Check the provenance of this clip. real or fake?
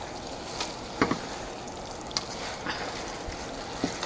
real